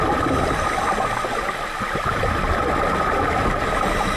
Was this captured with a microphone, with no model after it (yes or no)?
yes